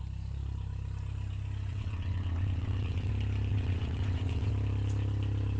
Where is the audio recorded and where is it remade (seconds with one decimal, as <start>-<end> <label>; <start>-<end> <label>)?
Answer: 0.0-1.7 recorded; 1.7-3.1 remade; 3.1-3.5 recorded; 3.5-4.5 remade; 4.5-5.6 recorded